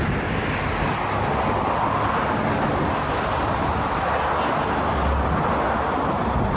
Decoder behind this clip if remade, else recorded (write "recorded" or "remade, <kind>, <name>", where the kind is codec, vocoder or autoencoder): recorded